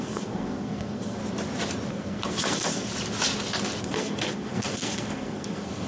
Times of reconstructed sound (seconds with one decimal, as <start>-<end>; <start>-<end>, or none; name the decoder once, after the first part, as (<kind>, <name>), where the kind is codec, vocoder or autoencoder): 0.0-1.2 (codec, SNAC); 1.9-2.9; 3.8-5.9